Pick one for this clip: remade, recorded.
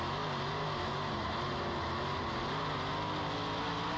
recorded